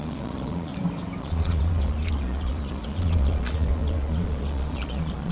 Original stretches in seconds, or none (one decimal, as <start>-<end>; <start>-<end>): 0.7-1.2